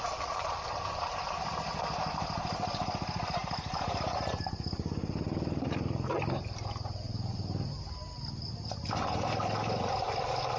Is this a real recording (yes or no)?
yes